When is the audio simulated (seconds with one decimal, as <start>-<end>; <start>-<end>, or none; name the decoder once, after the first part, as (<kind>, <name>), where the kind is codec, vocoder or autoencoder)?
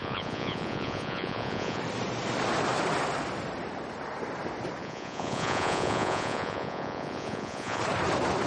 0.0-1.8 (vocoder, Vocos); 4.8-7.8